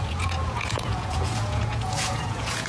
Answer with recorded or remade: remade